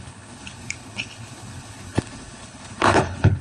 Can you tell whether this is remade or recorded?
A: remade